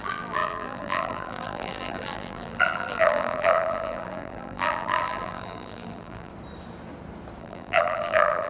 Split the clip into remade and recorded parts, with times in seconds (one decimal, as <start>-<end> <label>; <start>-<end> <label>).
0.0-6.3 remade; 6.3-7.4 recorded; 7.4-8.5 remade